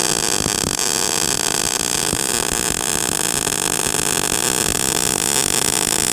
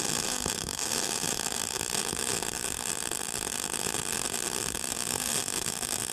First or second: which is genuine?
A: first